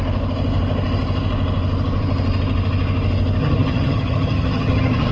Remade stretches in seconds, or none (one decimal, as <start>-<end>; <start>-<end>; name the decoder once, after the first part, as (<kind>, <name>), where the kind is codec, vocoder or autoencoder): 3.4-5.1 (vocoder, HiFi-GAN)